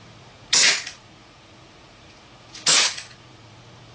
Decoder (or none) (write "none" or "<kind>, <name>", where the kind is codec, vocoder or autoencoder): vocoder, Vocos